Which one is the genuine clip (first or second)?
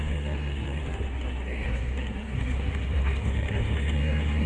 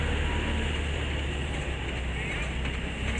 second